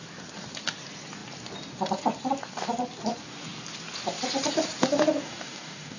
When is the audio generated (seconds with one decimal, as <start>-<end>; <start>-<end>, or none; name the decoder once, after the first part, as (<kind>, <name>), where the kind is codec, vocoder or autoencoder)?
5.2-6.0 (codec, DAC)